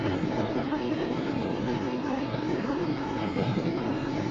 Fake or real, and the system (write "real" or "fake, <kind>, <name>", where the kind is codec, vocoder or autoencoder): fake, codec, SNAC